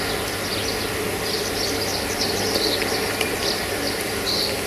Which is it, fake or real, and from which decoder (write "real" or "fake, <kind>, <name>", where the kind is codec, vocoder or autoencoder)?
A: real